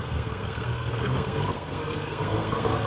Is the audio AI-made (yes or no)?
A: yes